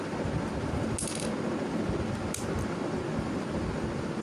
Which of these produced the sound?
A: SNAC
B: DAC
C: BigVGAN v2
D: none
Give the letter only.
D